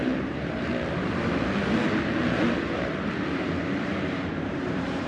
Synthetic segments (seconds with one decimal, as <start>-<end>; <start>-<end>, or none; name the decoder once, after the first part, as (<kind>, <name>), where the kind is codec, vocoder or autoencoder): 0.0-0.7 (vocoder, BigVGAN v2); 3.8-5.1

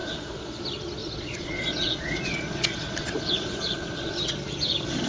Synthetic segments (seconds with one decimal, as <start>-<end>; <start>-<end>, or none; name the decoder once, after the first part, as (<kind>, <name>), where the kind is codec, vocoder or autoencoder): 0.0-0.6 (vocoder, Vocos); 1.0-4.1

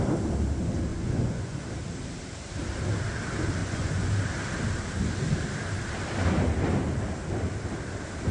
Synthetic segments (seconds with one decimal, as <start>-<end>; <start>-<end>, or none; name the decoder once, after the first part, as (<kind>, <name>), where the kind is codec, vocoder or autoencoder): 0.9-1.6 (vocoder, Vocos); 3.6-4.1